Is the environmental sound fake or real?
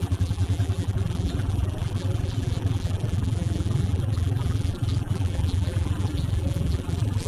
fake